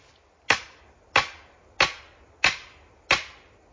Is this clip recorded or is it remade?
recorded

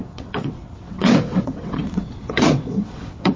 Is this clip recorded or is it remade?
remade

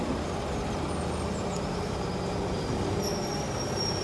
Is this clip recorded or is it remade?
recorded